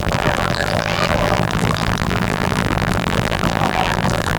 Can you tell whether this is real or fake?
fake